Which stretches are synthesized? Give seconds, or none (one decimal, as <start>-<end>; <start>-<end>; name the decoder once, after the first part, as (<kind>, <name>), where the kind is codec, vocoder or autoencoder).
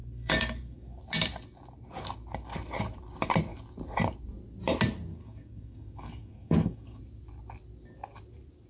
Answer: 0.0-1.0 (codec, DAC); 5.1-7.0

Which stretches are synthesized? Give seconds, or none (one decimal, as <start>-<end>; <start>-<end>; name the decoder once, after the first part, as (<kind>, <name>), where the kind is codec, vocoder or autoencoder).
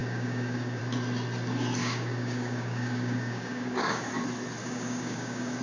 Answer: 0.0-0.8 (codec, DAC); 1.8-4.1; 4.6-5.6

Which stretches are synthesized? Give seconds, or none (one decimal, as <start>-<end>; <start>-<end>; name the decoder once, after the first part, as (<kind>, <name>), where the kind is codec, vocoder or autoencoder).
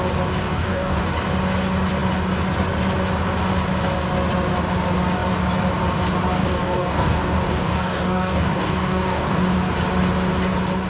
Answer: 0.4-1.0 (codec, DAC); 6.4-9.4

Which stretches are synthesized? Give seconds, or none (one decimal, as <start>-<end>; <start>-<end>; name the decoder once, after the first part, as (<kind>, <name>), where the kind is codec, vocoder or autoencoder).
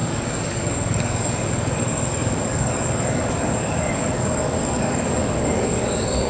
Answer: 0.0-6.3 (codec, DAC)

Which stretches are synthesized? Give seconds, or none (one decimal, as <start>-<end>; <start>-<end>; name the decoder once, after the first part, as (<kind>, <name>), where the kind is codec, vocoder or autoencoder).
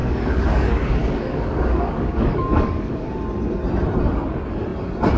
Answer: 0.0-3.1 (codec, DAC)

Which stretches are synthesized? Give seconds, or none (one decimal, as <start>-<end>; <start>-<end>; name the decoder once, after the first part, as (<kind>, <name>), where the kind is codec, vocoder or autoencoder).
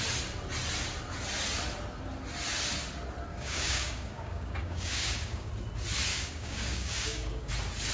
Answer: 3.3-5.5 (codec, DAC); 6.1-7.5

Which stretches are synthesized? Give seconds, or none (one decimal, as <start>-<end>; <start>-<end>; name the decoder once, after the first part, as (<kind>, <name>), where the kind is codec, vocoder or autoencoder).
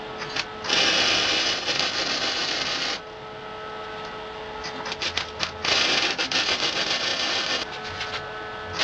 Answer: none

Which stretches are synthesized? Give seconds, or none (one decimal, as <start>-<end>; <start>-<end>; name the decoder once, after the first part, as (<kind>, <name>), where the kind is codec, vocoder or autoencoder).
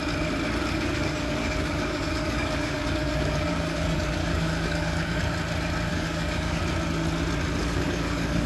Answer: 0.6-5.2 (codec, DAC); 5.9-6.6; 7.6-8.5